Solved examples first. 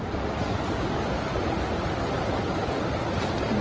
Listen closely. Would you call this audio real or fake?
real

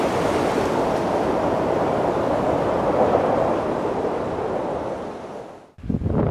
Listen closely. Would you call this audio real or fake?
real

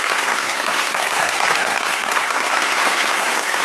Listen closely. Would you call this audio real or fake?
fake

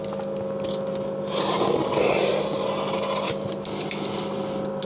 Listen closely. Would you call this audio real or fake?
real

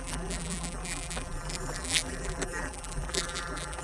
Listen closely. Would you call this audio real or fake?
fake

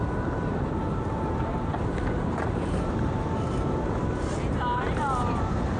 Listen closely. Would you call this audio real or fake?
fake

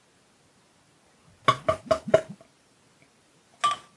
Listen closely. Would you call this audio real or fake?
real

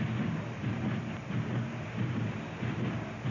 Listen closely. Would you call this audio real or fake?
real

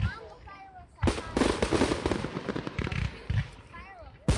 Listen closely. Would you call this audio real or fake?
real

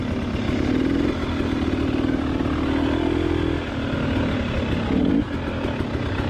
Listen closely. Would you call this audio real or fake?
real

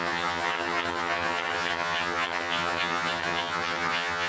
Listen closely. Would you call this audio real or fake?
fake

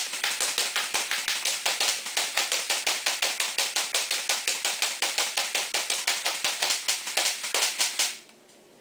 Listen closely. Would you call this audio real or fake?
real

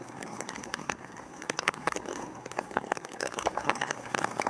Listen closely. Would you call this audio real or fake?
fake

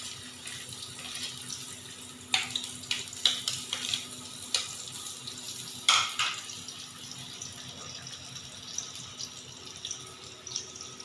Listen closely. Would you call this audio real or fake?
real